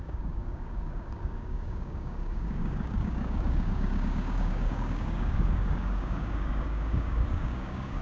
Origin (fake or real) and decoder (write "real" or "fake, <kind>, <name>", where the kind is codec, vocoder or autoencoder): fake, codec, DAC